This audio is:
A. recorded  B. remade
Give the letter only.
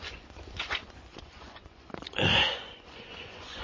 B